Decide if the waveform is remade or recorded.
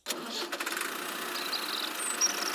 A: recorded